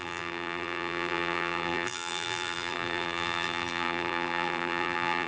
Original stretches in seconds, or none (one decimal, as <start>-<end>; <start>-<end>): none